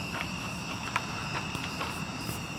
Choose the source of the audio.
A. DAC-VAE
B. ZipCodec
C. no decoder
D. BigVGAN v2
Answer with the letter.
D